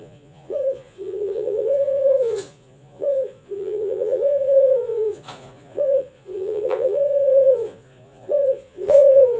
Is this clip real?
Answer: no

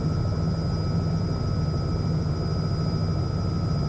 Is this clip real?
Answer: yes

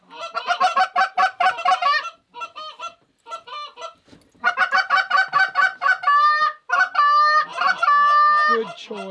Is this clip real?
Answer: yes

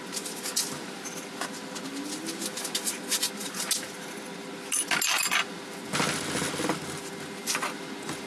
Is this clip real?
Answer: yes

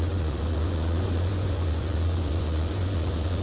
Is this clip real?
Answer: no